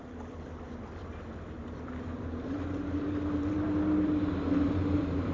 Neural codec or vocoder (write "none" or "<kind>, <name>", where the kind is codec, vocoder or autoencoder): vocoder, BigVGAN v2